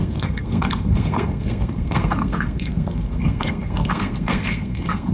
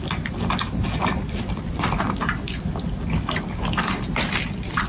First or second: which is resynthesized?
first